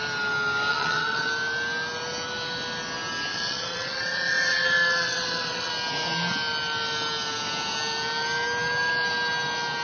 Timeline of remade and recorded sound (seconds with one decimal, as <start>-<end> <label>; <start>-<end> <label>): 0.0-0.7 recorded; 0.7-1.3 remade; 1.3-3.3 recorded; 3.3-5.7 remade; 5.7-9.8 recorded